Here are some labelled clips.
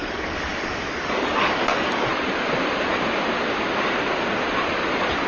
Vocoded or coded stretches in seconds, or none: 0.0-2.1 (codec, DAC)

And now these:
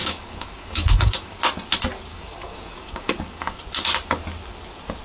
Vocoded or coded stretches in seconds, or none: 0.0-1.4 (codec, DAC); 2.1-3.6

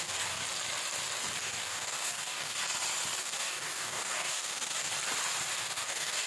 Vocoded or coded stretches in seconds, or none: 0.0-0.4 (codec, DAC); 1.4-2.6; 3.2-4.9; 5.6-6.3

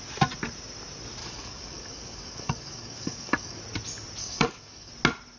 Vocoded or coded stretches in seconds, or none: 1.2-3.6 (codec, DAC); 4.2-4.9

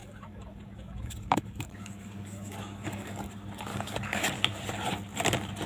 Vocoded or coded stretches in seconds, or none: 0.0-3.3 (codec, DAC); 3.7-4.3

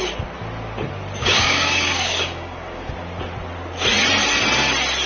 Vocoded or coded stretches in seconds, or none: 1.2-2.9 (codec, DAC)

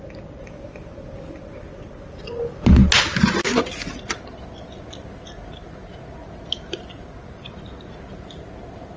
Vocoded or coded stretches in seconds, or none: none